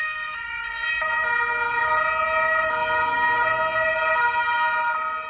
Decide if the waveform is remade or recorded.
recorded